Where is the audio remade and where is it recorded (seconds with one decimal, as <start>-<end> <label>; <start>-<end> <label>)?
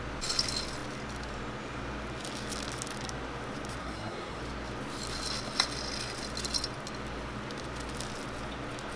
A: 0.0-3.8 recorded; 3.8-4.4 remade; 4.4-9.0 recorded